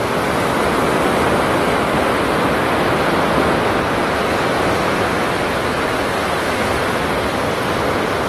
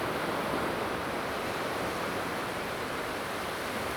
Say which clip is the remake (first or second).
second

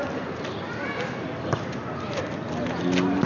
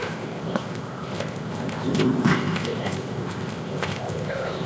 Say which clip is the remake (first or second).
second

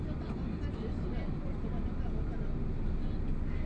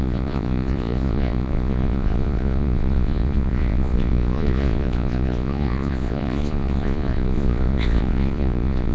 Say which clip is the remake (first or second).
second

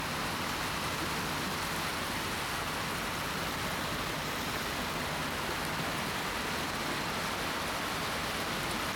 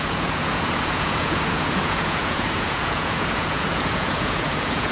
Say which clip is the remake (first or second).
second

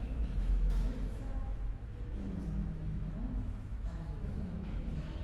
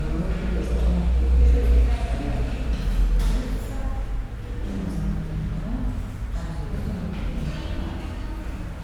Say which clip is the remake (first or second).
first